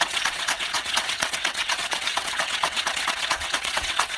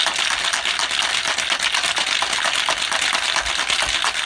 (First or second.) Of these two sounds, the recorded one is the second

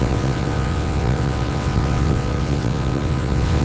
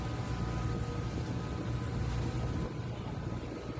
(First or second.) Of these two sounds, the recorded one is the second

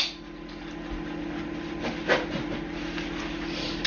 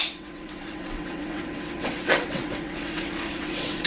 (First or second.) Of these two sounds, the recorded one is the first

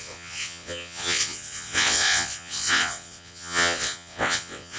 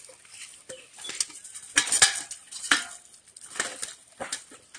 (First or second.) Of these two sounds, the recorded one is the second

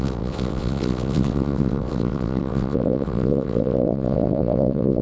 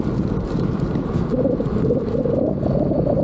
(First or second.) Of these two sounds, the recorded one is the second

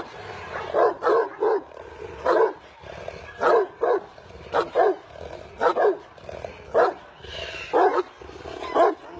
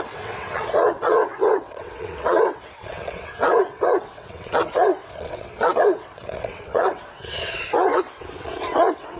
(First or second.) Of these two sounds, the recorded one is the first